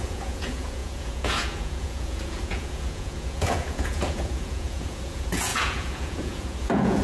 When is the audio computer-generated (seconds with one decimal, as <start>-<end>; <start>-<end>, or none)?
0.0-7.0